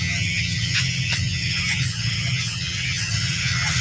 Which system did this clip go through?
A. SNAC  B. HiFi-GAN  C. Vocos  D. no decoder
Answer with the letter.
B